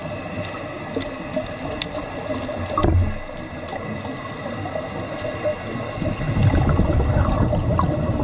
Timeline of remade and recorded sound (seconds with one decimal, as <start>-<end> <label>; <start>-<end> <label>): 0.0-8.2 recorded